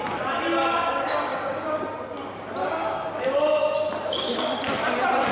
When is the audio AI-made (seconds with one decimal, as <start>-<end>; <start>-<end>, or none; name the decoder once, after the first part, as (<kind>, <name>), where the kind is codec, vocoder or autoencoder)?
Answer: 0.6-1.8 (codec, DAC); 2.6-3.2; 4.1-4.6